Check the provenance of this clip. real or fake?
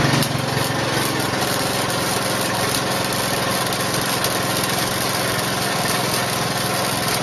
real